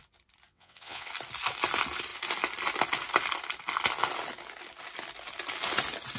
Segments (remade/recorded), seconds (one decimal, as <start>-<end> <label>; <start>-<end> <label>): 0.0-0.5 recorded; 0.5-1.1 remade; 1.1-6.2 recorded